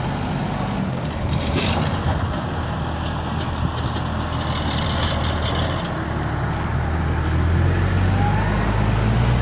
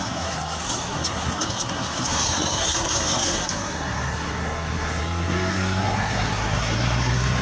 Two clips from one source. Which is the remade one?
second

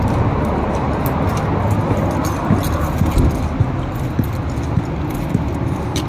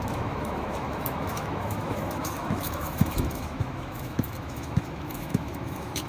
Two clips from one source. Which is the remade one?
second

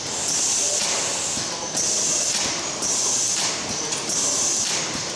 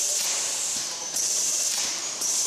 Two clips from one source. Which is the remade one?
second